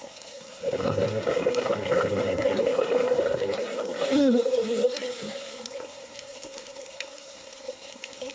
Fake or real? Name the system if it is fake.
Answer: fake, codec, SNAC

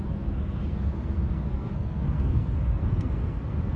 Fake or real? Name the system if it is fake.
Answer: fake, codec, SNAC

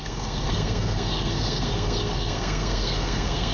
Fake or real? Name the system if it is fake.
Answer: fake, codec, SNAC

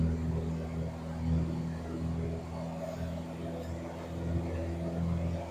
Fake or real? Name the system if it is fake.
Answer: real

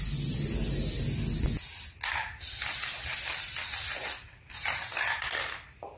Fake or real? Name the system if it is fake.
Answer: real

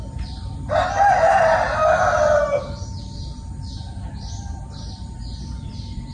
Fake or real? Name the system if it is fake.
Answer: real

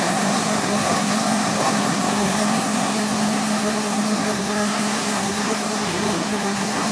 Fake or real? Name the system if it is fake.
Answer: fake, codec, SNAC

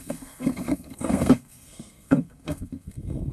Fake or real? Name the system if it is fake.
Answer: fake, codec, SNAC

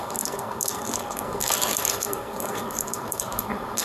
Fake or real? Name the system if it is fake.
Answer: fake, codec, SNAC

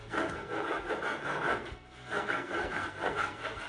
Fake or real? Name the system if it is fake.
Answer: fake, codec, SNAC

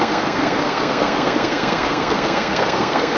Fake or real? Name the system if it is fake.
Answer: fake, codec, SNAC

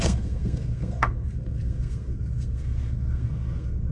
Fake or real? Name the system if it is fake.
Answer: fake, codec, SNAC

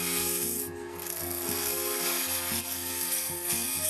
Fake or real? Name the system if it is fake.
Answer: fake, codec, SNAC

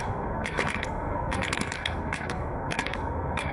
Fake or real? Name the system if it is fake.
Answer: fake, codec, SNAC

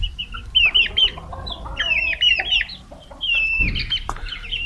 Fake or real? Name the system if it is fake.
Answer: real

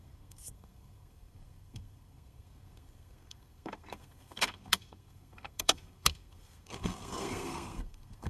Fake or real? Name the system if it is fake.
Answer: fake, codec, SNAC